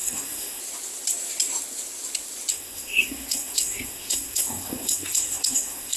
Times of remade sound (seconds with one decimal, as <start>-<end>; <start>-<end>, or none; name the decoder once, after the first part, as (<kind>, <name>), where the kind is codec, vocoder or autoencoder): 0.0-0.6 (codec, SNAC); 2.5-6.0